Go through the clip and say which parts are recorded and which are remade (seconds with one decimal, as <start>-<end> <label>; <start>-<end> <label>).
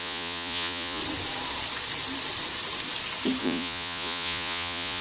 0.0-1.0 remade; 1.0-3.4 recorded; 3.4-5.0 remade